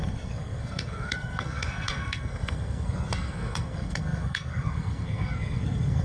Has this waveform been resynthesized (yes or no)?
yes